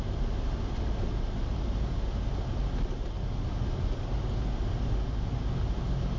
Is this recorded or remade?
recorded